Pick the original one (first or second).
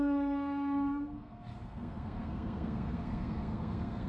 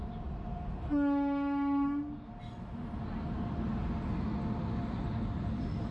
second